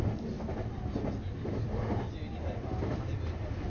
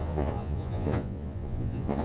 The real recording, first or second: first